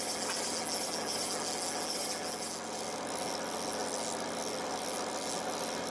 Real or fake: real